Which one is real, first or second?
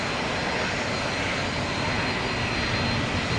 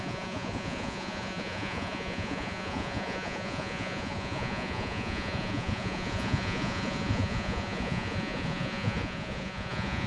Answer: first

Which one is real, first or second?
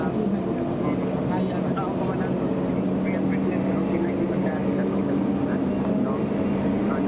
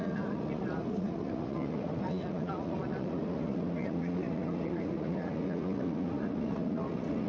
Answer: first